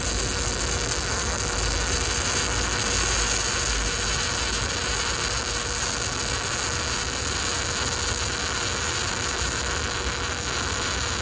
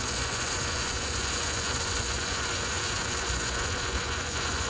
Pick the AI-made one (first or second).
second